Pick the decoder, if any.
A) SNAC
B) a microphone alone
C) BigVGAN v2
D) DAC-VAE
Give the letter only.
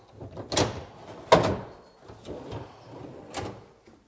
B